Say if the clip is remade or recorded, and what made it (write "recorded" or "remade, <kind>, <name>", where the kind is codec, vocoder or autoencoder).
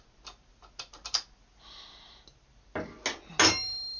recorded